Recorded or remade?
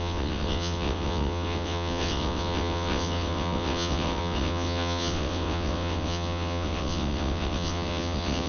remade